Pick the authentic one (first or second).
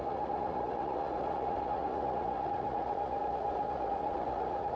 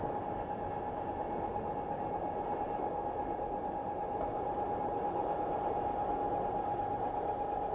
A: second